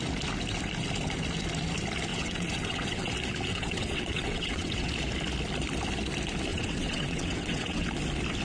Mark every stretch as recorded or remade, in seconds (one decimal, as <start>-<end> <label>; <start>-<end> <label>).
0.0-2.1 recorded; 2.1-3.1 remade; 3.1-3.5 recorded; 3.5-4.9 remade; 4.9-6.5 recorded; 6.5-7.9 remade; 7.9-8.4 recorded